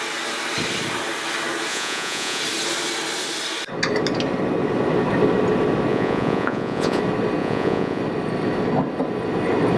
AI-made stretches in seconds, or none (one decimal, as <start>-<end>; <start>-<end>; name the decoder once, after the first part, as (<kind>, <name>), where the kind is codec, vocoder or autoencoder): 1.7-2.4 (vocoder, Vocos); 5.9-7.0; 7.4-8.0